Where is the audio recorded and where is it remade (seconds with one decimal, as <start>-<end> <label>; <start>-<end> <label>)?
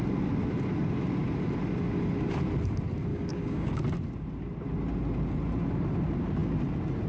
0.0-3.1 recorded; 3.1-3.8 remade; 3.8-7.1 recorded